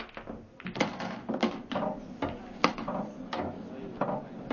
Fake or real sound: real